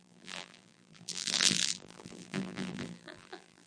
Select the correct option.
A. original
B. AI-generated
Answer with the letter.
B